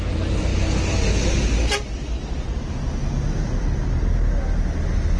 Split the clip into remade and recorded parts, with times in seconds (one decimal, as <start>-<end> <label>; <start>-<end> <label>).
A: 0.0-5.2 recorded